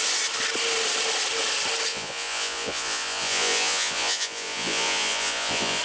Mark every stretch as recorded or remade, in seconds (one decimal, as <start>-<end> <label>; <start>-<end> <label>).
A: 0.0-1.9 recorded; 1.9-5.8 remade